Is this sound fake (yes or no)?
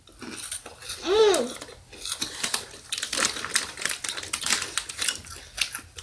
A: no